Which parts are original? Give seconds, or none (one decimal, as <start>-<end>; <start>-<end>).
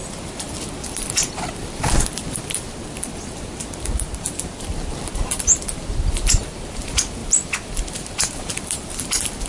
0.0-9.5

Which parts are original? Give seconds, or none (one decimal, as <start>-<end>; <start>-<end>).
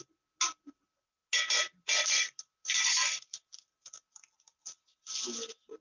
0.0-5.8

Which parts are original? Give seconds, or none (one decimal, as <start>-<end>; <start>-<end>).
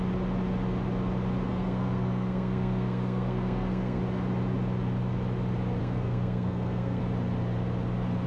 0.0-1.5; 4.0-5.8; 7.0-8.3